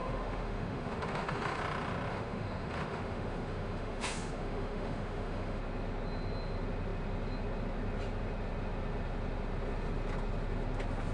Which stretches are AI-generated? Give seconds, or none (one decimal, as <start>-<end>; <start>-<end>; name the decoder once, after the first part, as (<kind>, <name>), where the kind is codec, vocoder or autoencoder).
0.0-1.6 (autoencoder, DAC-VAE); 2.1-5.6